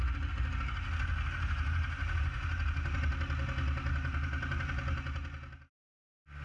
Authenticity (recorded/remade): recorded